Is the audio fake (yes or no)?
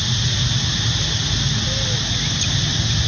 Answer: no